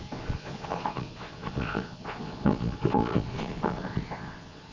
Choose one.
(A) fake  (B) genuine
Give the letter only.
A